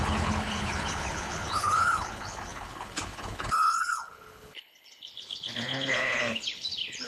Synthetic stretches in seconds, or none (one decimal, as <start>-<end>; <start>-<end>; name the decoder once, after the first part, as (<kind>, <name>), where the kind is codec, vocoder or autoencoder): 0.0-7.1 (codec, HILCodec)

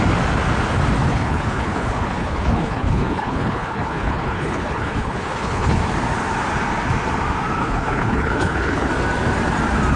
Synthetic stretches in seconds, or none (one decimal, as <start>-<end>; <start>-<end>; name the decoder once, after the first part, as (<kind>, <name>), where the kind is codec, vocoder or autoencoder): 1.1-5.8 (codec, HILCodec); 7.6-8.9

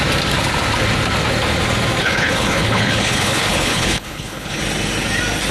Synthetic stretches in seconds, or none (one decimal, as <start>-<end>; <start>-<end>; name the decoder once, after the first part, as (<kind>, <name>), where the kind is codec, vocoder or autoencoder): 2.0-4.6 (codec, HILCodec)

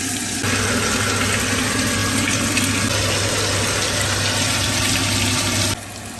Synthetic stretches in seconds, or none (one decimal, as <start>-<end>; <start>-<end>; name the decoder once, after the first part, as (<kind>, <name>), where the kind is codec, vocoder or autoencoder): none

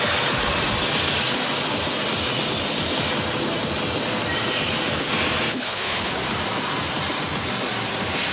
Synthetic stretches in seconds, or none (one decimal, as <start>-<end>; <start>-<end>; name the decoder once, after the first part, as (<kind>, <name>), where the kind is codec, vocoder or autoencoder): 5.5-6.1 (codec, HILCodec)

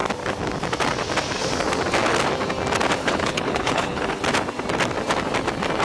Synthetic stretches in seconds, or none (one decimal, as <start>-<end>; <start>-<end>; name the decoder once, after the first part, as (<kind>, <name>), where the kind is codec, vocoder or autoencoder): 3.0-4.2 (codec, HILCodec)

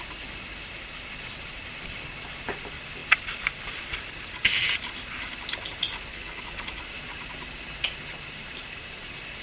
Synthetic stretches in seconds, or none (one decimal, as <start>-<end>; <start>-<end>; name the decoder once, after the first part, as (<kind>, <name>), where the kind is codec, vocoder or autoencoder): 6.1-6.8 (codec, HILCodec)

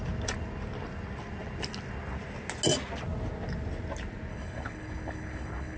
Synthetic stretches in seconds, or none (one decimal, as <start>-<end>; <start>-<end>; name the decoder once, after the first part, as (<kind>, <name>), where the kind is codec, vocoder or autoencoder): 4.3-5.8 (codec, HILCodec)